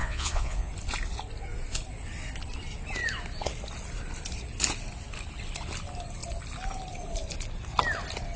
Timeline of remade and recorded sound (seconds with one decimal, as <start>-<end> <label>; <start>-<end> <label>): 0.0-0.7 remade; 0.7-8.4 recorded